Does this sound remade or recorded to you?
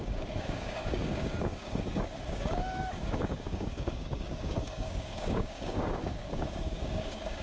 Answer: remade